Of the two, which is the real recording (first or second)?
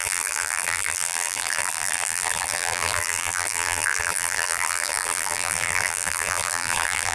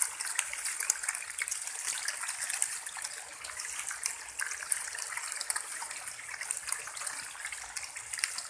second